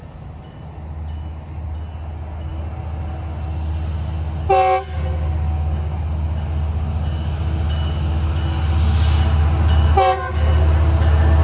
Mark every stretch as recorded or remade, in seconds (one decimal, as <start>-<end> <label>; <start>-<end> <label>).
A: 0.0-11.4 recorded